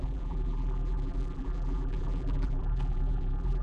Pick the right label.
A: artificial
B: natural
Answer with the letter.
A